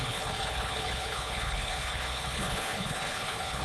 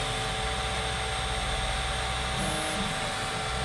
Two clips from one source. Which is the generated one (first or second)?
first